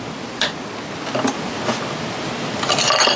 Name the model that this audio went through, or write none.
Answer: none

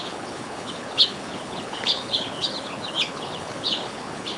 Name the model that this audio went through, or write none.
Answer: codec, HILCodec